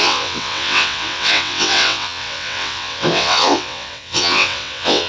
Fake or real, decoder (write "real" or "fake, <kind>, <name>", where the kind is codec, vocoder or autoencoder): fake, vocoder, WaveNeXt